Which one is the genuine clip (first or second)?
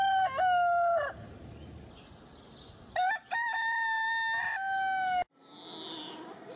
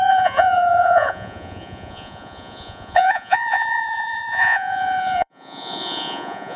first